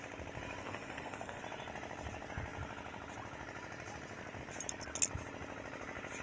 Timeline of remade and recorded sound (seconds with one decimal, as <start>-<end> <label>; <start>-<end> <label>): 0.0-0.6 recorded; 0.6-1.4 remade; 1.4-6.2 recorded